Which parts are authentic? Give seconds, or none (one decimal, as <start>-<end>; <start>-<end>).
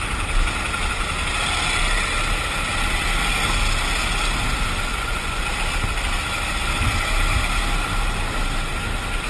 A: 0.0-4.9; 5.4-9.3